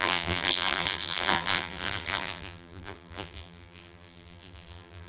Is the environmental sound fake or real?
fake